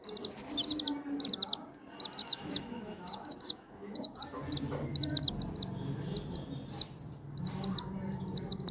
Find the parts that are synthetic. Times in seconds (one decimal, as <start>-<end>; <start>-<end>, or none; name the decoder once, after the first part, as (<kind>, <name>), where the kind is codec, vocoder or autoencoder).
2.2-4.2 (autoencoder, DAC-VAE)